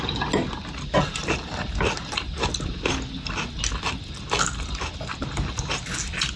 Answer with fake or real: real